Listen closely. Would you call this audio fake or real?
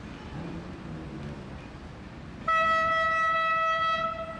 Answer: real